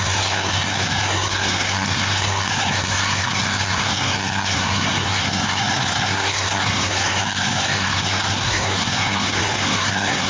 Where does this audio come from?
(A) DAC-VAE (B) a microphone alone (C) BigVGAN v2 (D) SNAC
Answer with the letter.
D